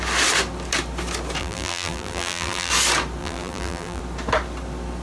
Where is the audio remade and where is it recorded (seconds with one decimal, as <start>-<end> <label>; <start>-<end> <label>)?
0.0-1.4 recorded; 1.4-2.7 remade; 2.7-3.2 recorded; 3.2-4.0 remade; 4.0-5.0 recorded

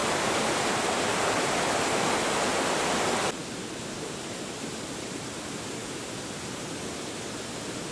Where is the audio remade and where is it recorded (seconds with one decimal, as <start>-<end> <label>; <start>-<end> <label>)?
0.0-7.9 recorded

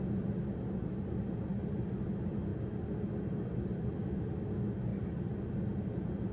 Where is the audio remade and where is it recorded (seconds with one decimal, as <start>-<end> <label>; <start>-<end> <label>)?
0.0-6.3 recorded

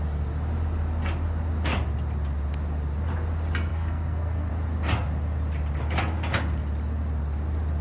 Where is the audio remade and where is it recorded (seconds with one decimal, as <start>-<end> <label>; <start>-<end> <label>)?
0.0-3.7 recorded; 3.7-4.5 remade; 4.5-7.8 recorded